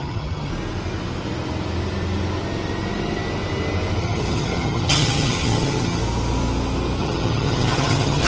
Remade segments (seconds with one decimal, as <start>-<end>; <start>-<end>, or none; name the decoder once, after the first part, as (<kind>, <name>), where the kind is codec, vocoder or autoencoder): 0.0-0.5 (vocoder, HiFi-GAN); 4.0-6.0; 7.0-8.3